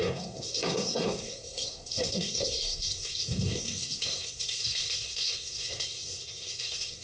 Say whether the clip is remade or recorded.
remade